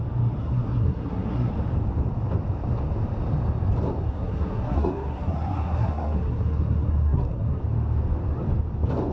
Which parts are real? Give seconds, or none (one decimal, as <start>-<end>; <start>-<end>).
0.0-0.4; 1.5-4.1; 7.6-9.1